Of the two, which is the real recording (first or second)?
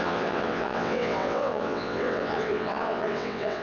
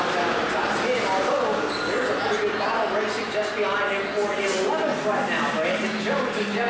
second